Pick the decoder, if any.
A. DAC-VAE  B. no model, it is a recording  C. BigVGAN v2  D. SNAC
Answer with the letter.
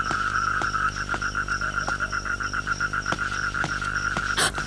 C